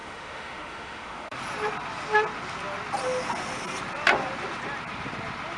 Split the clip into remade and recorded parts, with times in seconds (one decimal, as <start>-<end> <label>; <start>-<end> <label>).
0.0-1.4 remade; 1.4-5.6 recorded